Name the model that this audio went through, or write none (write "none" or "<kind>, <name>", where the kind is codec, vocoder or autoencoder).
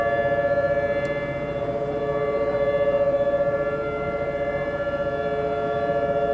vocoder, BigVGAN v2